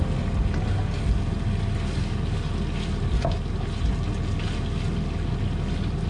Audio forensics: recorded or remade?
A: recorded